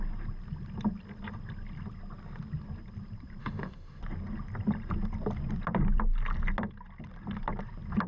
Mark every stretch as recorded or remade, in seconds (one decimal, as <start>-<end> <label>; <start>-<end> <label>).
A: 0.0-3.4 recorded; 3.4-4.0 remade; 4.0-8.1 recorded

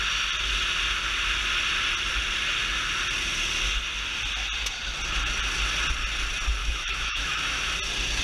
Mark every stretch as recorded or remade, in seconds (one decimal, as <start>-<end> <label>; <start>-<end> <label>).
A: 0.0-6.6 recorded; 6.6-7.7 remade; 7.7-8.2 recorded

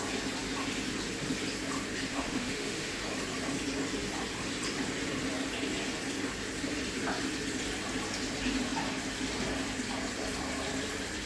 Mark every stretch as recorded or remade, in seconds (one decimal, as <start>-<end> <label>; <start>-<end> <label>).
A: 0.0-2.1 recorded; 2.1-3.0 remade; 3.0-11.3 recorded

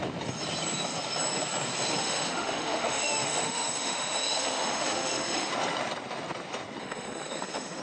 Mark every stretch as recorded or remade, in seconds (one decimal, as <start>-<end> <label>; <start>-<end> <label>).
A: 0.0-2.0 recorded; 2.0-5.5 remade; 5.5-6.8 recorded; 6.8-7.8 remade

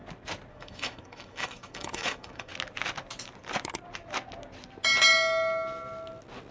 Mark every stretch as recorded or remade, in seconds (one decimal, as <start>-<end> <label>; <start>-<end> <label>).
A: 0.0-0.5 recorded; 0.5-2.5 remade; 2.5-6.5 recorded

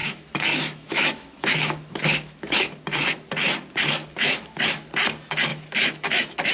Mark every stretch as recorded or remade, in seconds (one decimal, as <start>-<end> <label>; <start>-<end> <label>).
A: 0.0-2.8 remade; 2.8-4.0 recorded; 4.0-4.9 remade; 4.9-5.5 recorded; 5.5-6.5 remade

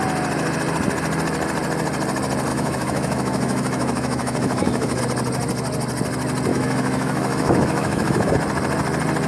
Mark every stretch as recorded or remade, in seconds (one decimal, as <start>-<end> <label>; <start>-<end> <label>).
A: 0.0-2.5 recorded; 2.5-5.0 remade; 5.0-6.5 recorded; 6.5-8.3 remade; 8.3-9.3 recorded